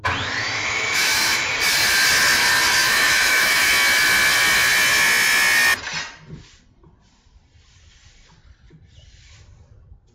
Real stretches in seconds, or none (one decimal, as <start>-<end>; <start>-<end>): 0.0-0.4; 1.5-2.8; 3.7-10.1